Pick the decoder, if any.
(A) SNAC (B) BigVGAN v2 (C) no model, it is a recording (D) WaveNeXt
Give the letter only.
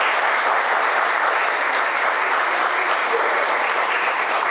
C